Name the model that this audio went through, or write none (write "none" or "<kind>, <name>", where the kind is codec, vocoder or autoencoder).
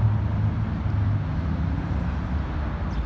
none